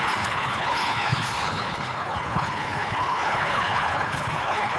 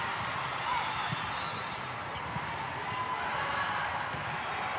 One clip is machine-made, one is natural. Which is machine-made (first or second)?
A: first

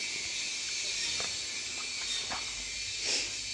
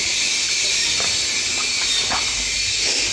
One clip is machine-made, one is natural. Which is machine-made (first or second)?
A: second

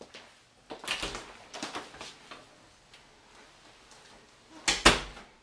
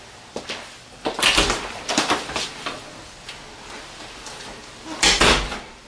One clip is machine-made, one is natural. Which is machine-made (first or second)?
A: second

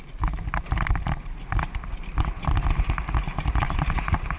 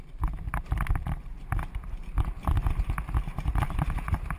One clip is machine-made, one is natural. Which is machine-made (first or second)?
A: second